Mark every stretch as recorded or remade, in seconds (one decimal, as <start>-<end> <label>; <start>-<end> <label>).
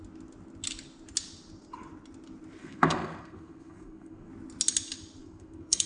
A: 0.0-2.6 recorded; 2.6-4.3 remade; 4.3-5.2 recorded; 5.2-5.9 remade